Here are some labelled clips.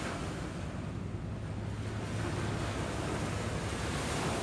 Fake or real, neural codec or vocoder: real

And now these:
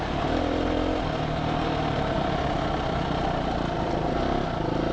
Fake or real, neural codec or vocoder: real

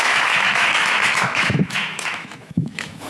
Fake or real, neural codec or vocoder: fake, autoencoder, DAC-VAE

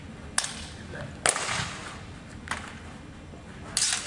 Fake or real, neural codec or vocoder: real